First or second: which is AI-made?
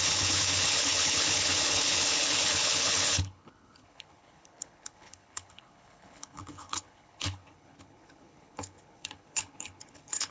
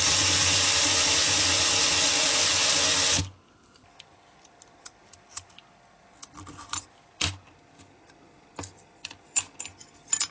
first